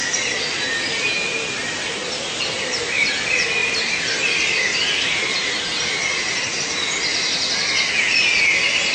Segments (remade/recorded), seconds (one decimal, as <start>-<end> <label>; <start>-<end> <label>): 0.0-2.0 recorded; 2.0-3.1 remade; 3.1-8.9 recorded